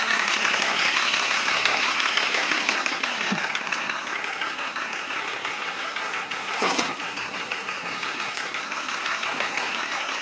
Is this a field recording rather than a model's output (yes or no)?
no